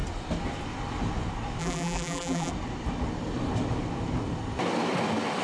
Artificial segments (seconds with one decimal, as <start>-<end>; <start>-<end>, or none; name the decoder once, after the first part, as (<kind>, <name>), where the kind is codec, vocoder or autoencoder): 1.6-2.5 (vocoder, BigVGAN v2)